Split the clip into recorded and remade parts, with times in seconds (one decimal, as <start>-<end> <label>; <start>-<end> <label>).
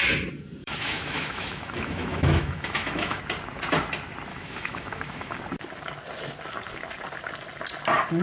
0.0-0.6 recorded; 0.6-3.2 remade; 3.2-4.3 recorded; 4.3-5.4 remade; 5.4-8.2 recorded